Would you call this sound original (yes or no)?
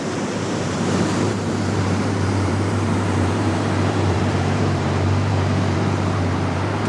no